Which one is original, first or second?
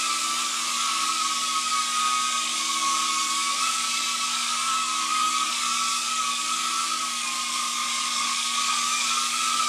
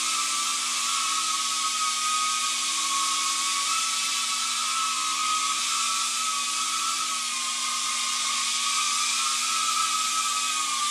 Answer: second